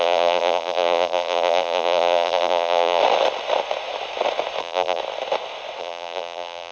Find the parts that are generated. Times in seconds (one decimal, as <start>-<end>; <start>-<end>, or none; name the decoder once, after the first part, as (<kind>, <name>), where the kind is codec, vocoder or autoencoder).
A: 0.0-3.0 (vocoder, BigVGAN v2); 4.6-5.0; 5.8-6.7